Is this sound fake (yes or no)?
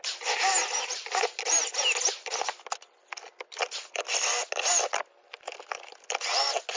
no